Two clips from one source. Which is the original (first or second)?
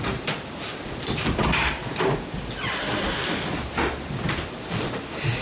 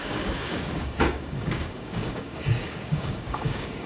first